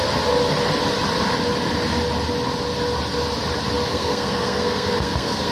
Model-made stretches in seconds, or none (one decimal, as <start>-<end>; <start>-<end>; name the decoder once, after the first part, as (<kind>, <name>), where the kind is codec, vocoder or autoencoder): 3.9-5.5 (codec, SNAC)